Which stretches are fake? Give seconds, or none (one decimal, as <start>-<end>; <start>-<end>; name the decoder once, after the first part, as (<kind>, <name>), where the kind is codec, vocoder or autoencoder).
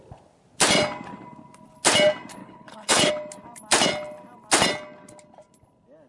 2.4-3.1 (codec, HILCodec)